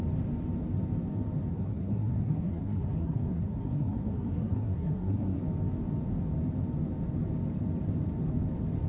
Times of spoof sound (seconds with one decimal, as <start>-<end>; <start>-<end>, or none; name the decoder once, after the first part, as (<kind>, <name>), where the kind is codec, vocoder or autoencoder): 1.5-5.4 (codec, SNAC)